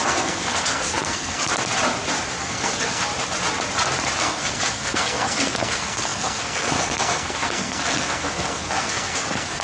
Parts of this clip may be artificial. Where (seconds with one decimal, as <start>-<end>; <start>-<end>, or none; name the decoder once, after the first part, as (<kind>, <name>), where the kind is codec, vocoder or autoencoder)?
0.0-1.5 (codec, SNAC); 2.4-3.1; 4.2-9.6